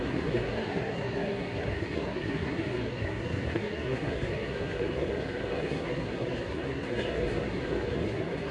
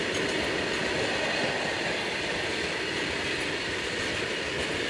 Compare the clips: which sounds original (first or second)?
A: second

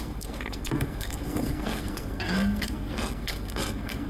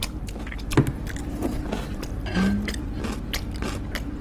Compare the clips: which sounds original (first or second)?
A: second